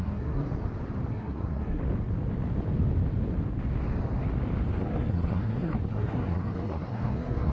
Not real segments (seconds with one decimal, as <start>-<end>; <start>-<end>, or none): 0.0-0.5; 1.1-1.8; 4.8-7.5